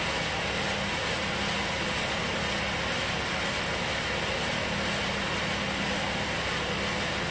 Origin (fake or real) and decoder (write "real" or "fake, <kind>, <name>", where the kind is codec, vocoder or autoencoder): real